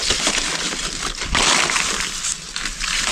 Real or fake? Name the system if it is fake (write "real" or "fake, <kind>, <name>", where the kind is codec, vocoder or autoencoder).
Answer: real